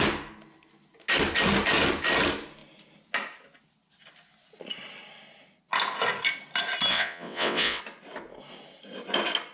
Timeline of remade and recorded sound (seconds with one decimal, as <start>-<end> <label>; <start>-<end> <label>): 0.0-6.9 recorded; 6.9-7.8 remade; 7.8-9.5 recorded